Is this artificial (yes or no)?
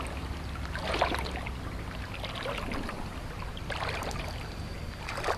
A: no